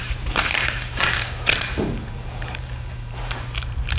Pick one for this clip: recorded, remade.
remade